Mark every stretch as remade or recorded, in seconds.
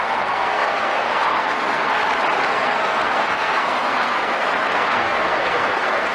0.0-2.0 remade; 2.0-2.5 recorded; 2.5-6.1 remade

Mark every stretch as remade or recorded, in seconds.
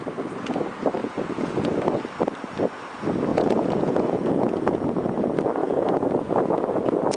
0.0-1.0 recorded; 1.0-1.8 remade; 1.8-3.3 recorded; 3.3-4.9 remade; 4.9-5.6 recorded; 5.6-6.3 remade; 6.3-7.2 recorded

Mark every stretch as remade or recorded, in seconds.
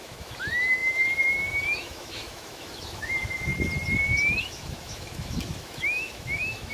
0.0-3.5 remade; 3.5-4.4 recorded; 4.4-6.7 remade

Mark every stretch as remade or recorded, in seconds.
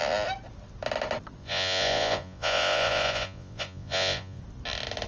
0.0-1.4 recorded; 1.4-4.4 remade; 4.4-5.1 recorded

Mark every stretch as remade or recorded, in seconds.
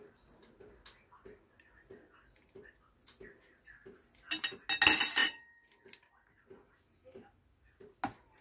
0.0-8.4 recorded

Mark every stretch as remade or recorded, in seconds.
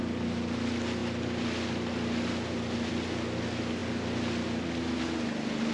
0.0-5.7 recorded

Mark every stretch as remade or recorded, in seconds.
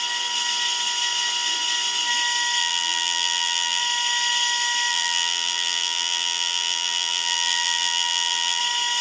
0.0-2.6 recorded; 2.6-3.8 remade; 3.8-4.9 recorded; 4.9-8.6 remade; 8.6-9.0 recorded